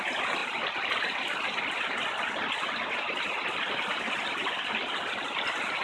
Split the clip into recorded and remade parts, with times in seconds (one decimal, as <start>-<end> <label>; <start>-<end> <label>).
0.0-5.8 recorded